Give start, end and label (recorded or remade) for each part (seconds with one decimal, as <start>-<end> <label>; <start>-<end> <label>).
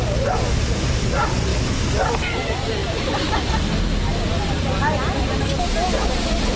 0.0-6.6 recorded